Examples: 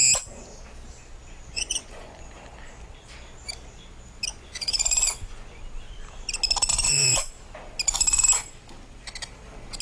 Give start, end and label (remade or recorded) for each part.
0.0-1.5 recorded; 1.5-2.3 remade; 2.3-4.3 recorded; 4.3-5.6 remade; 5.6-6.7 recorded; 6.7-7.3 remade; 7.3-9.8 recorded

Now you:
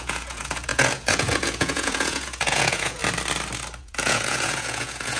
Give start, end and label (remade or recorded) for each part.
0.0-3.0 remade; 3.0-3.8 recorded; 3.8-5.2 remade

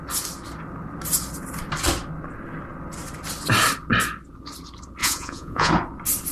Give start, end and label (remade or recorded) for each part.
0.0-5.0 recorded; 5.0-5.7 remade; 5.7-6.3 recorded

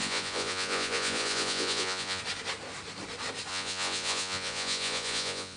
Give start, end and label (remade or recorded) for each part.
0.0-2.2 remade; 2.2-3.5 recorded; 3.5-5.6 remade